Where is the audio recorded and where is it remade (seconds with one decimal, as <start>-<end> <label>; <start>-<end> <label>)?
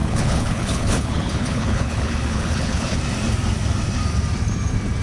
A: 0.0-3.0 remade; 3.0-5.0 recorded